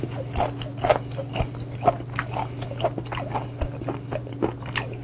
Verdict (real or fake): real